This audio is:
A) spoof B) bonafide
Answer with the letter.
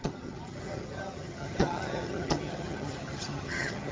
A